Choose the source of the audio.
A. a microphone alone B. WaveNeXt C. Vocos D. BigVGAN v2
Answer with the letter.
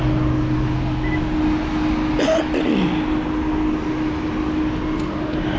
A